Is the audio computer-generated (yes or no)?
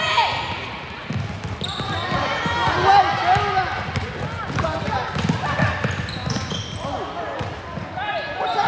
no